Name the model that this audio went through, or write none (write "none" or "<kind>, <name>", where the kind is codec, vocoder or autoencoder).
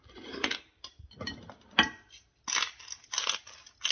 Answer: none